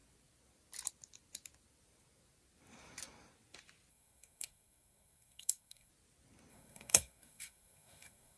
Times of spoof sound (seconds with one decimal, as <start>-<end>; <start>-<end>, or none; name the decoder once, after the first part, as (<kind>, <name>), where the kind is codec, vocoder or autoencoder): 3.9-5.9 (codec, SNAC); 6.5-8.4